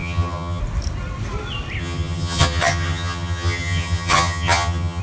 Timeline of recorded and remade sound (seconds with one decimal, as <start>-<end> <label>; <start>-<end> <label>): 0.0-0.6 remade; 0.6-1.8 recorded; 1.8-5.0 remade